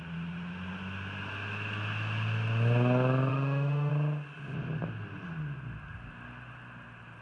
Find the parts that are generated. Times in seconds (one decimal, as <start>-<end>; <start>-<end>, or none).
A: 3.3-3.9